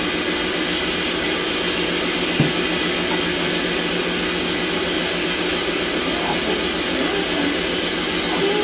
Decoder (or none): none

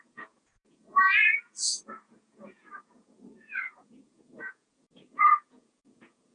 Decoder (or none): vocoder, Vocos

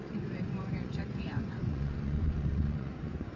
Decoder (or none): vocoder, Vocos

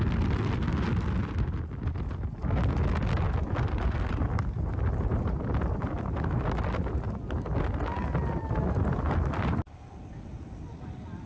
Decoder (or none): none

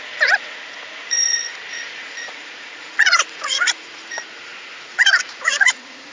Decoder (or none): vocoder, Vocos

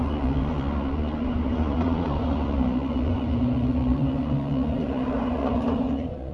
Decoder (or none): vocoder, Vocos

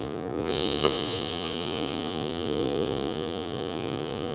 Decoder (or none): vocoder, Vocos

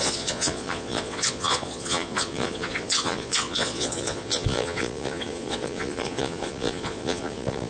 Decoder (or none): vocoder, Vocos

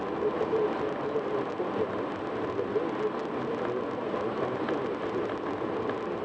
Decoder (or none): none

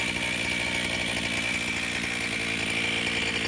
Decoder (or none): none